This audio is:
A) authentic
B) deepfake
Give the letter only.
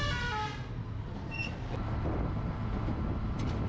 A